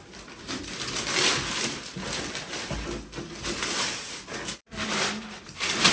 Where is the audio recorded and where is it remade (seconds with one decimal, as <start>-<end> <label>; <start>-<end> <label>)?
0.0-4.6 recorded; 4.6-5.4 remade; 5.4-5.9 recorded